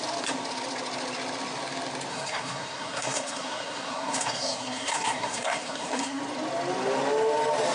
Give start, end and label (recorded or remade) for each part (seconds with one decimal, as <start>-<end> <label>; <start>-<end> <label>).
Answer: 0.0-2.1 recorded; 2.1-6.2 remade; 6.2-7.7 recorded